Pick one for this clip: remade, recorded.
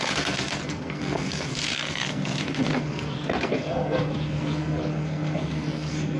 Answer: remade